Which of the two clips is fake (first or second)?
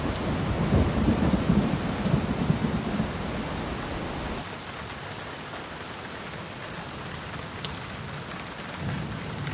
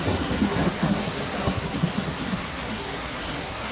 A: second